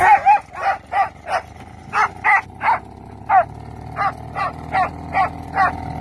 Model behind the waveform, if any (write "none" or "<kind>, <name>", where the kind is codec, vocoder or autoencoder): none